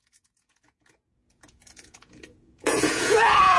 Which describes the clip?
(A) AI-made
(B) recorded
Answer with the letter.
A